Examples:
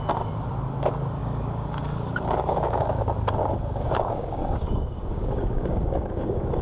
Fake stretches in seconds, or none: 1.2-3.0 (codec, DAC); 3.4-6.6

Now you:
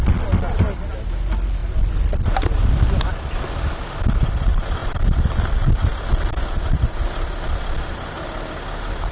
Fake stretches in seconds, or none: none

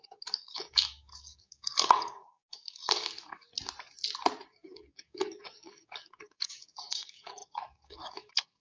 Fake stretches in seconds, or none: 0.0-3.5 (codec, DAC); 4.5-8.6